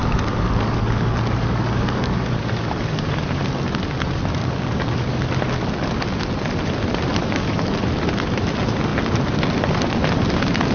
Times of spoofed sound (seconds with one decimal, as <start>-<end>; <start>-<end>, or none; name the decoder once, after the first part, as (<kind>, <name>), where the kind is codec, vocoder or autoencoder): 0.0-3.5 (codec, DAC); 4.4-5.3; 7.2-7.8

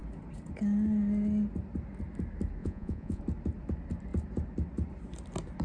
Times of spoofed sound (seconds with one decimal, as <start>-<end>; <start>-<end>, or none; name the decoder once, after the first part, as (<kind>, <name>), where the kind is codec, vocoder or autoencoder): 2.6-3.2 (vocoder, Vocos)

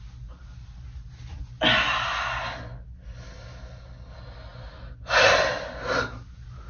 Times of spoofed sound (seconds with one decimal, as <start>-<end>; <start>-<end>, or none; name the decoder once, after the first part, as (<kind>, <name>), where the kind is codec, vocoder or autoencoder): none

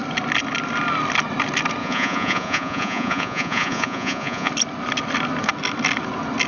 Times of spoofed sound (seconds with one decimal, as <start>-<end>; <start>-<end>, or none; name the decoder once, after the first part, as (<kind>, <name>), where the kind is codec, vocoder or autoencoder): 1.8-4.5 (vocoder, Vocos)

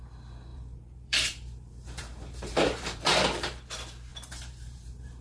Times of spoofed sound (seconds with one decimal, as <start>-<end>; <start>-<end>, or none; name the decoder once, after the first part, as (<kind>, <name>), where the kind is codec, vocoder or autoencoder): 0.5-3.6 (vocoder, BigVGAN v2); 4.1-5.2